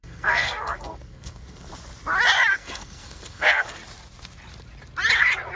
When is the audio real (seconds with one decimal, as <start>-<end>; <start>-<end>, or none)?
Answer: 1.7-2.5; 3.8-5.6